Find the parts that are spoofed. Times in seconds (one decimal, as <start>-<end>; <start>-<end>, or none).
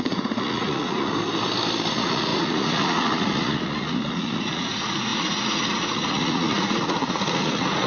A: 0.0-1.1; 1.9-7.9